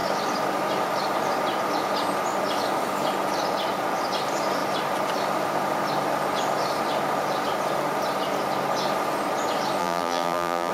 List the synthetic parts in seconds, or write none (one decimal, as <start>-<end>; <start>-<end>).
9.8-10.7